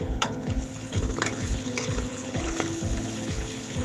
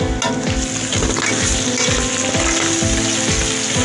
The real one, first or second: second